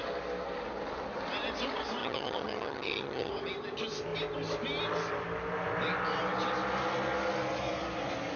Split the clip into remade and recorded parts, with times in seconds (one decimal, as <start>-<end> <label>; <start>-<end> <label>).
0.0-2.0 recorded; 2.0-3.3 remade; 3.3-8.4 recorded